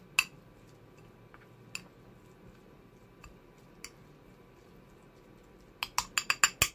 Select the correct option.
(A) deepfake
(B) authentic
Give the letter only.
B